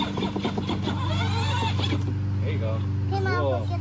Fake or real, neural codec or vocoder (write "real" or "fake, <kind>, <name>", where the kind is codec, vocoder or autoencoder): real